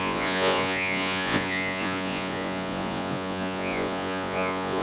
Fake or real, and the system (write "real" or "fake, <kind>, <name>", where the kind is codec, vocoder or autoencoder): fake, vocoder, Vocos